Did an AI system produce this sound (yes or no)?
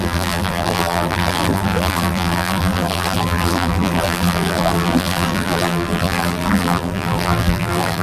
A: yes